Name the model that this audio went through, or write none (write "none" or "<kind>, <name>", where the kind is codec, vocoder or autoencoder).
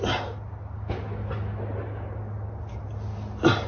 none